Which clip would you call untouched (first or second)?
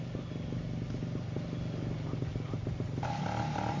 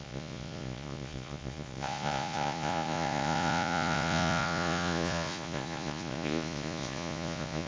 first